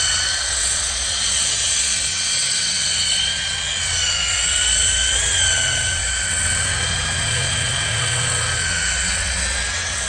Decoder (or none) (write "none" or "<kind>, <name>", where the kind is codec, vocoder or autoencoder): vocoder, WaveNeXt